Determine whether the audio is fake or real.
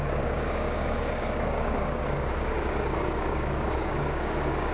fake